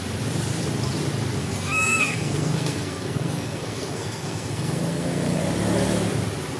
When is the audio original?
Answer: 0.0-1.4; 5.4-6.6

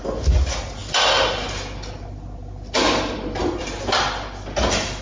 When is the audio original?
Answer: 0.0-5.0

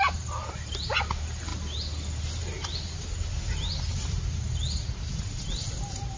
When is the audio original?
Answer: 0.0-6.2

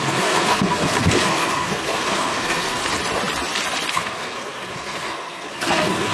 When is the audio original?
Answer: 2.8-3.9

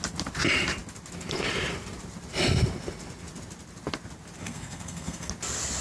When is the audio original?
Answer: 0.0-4.4; 5.3-5.8